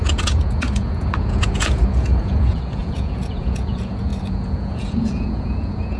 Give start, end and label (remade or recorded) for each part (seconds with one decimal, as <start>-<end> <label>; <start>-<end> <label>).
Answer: 0.0-6.0 remade